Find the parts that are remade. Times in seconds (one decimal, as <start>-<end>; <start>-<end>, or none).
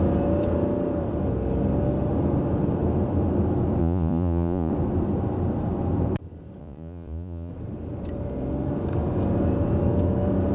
3.8-4.7; 6.6-7.5